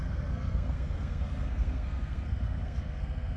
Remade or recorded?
remade